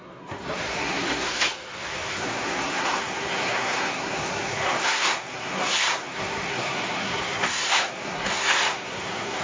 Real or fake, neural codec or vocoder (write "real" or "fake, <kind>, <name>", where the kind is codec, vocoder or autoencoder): fake, codec, SNAC